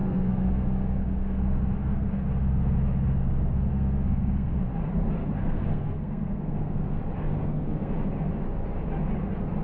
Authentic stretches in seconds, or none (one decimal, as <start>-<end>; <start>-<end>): 2.1-3.7; 4.6-5.4; 7.0-7.4; 7.9-9.6